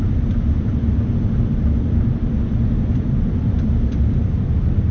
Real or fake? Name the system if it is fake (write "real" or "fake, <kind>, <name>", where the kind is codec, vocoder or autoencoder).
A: fake, vocoder, BigVGAN v2